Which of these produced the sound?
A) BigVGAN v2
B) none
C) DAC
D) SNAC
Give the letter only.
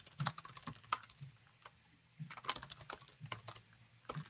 A